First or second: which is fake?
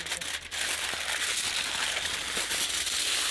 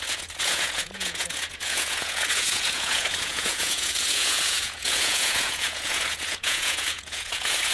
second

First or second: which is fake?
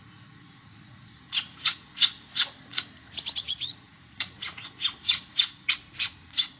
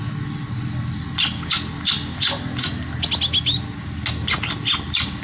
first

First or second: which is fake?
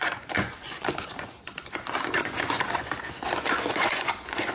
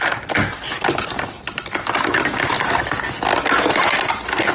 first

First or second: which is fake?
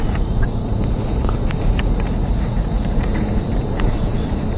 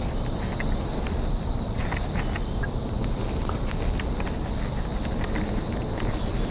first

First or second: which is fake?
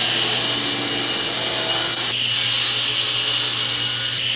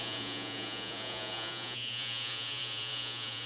second